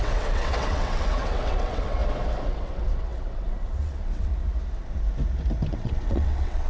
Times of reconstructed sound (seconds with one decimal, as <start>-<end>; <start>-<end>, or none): 0.0-2.0; 2.5-4.3; 5.7-6.7